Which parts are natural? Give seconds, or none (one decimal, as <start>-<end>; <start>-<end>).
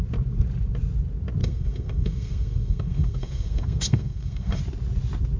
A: 0.0-1.4; 4.6-5.4